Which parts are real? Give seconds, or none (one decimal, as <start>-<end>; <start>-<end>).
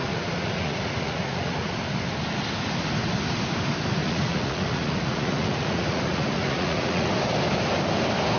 1.8-4.0; 7.1-8.4